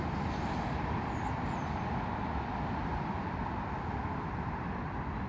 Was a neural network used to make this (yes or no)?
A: no